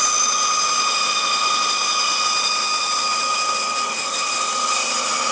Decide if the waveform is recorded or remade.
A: recorded